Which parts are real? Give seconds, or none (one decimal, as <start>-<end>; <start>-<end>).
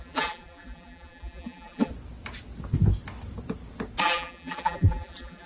1.9-4.0